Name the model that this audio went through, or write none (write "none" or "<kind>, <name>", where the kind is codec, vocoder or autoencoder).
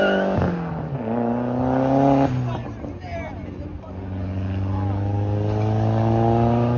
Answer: none